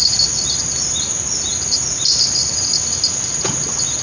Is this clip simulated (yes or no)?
no